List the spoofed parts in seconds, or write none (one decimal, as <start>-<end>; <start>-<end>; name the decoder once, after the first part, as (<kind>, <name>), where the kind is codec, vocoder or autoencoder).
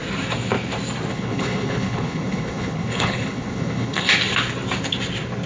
1.1-4.1 (codec, HILCodec)